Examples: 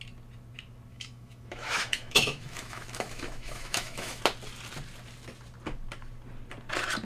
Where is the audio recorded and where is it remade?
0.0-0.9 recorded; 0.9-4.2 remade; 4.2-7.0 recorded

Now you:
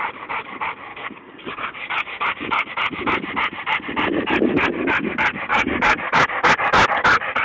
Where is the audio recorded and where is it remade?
0.0-0.9 recorded; 0.9-2.7 remade; 2.7-5.5 recorded; 5.5-6.5 remade; 6.5-7.4 recorded

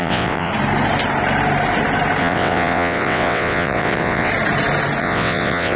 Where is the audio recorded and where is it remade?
0.0-0.5 remade; 0.5-2.2 recorded; 2.2-4.3 remade; 4.3-5.0 recorded; 5.0-5.8 remade

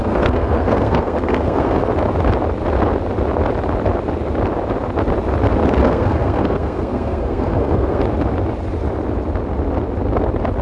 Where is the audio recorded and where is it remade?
0.0-1.9 remade; 1.9-5.8 recorded; 5.8-8.0 remade; 8.0-10.6 recorded

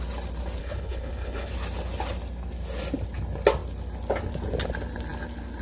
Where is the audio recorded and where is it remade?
0.0-0.6 recorded; 0.6-1.5 remade; 1.5-5.6 recorded